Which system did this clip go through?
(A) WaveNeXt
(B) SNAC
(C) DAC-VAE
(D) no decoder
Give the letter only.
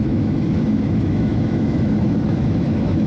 C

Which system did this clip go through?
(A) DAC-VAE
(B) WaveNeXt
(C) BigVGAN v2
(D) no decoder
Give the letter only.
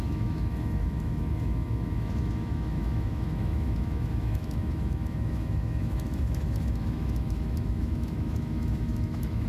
A